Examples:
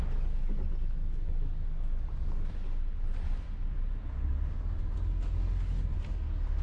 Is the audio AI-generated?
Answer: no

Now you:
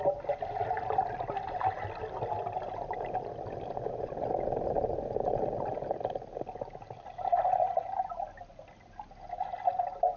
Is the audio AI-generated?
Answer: no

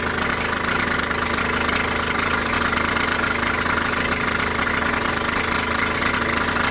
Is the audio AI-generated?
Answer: no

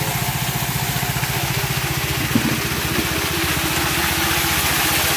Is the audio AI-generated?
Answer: no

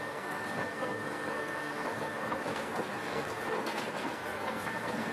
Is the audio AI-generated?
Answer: yes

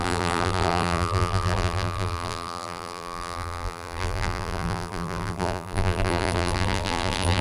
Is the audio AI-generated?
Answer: yes